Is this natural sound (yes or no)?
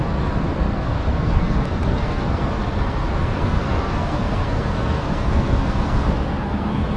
no